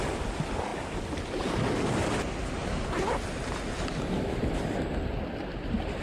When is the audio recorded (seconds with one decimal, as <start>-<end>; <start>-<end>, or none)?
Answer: 0.0-0.7; 1.5-6.0